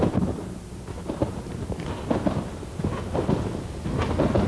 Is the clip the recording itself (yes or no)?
yes